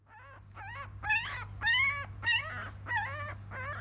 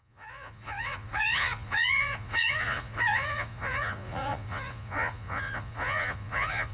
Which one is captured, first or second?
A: first